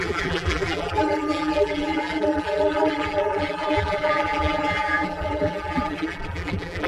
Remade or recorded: remade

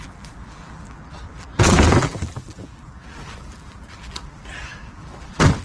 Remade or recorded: remade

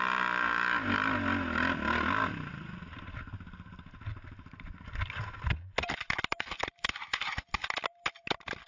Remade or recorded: recorded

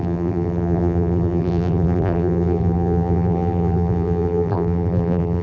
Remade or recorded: remade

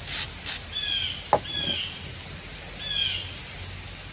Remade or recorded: recorded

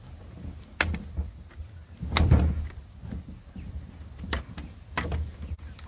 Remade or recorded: recorded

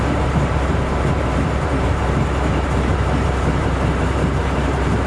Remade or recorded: remade